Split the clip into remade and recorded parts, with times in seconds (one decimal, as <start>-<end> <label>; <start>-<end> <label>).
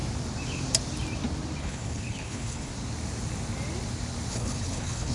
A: 0.0-1.6 recorded; 1.6-2.7 remade; 2.7-4.3 recorded; 4.3-5.1 remade